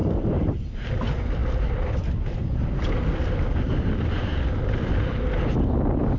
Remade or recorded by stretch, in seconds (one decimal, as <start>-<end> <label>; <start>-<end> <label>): 0.0-6.2 recorded